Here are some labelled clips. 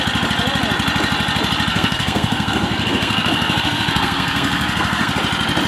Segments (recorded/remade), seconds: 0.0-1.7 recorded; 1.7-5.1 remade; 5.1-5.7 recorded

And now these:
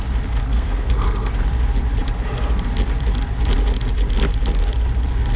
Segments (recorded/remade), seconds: 0.0-0.5 recorded; 0.5-1.3 remade; 1.3-5.4 recorded

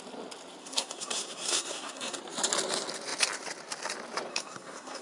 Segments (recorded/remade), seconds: 0.0-0.6 recorded; 0.6-2.2 remade; 2.2-4.3 recorded; 4.3-5.0 remade

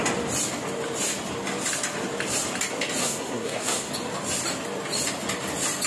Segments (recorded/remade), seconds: 0.0-3.0 recorded; 3.0-3.9 remade; 3.9-5.9 recorded